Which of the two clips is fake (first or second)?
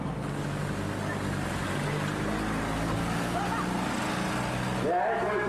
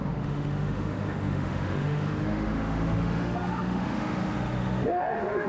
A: second